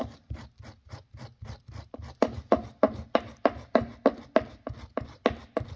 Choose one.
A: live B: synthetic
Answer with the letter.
A